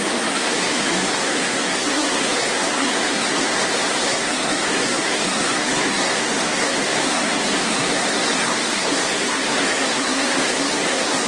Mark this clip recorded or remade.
remade